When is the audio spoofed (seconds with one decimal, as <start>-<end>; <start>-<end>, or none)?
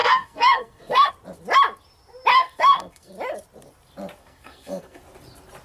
0.0-1.1; 2.3-3.1; 4.2-5.0